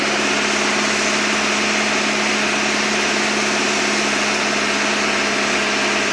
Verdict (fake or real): real